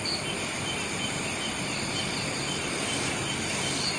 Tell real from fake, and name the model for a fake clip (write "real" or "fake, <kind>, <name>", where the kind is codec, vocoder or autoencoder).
real